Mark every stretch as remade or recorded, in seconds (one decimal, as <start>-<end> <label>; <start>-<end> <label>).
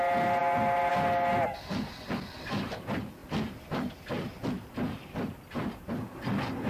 0.0-6.7 recorded